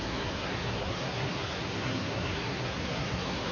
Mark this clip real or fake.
fake